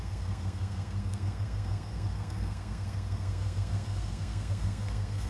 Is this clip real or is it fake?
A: fake